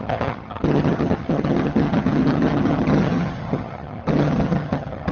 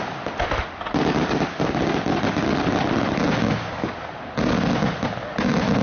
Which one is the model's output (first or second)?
first